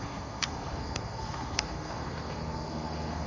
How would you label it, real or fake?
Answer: fake